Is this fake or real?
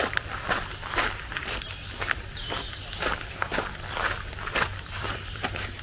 fake